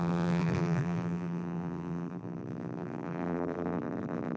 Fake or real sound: fake